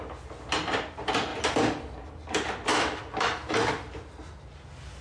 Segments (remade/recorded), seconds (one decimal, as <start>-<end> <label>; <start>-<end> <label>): 0.0-2.7 recorded; 2.7-3.5 remade; 3.5-5.0 recorded